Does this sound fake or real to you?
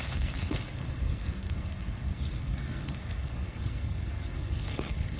fake